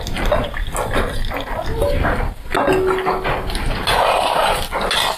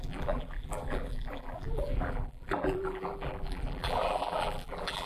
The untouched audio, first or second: first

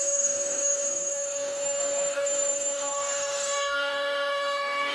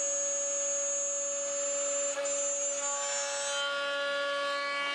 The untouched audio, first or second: second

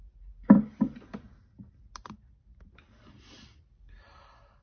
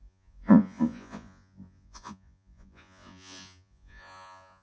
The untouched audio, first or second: first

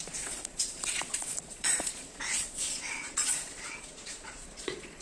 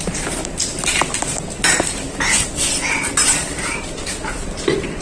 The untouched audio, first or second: second